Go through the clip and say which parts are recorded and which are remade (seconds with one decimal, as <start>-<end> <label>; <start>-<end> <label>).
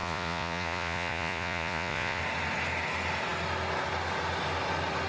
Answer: 0.0-2.2 remade; 2.2-5.1 recorded